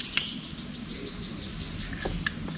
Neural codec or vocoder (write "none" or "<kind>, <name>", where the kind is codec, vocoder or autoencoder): none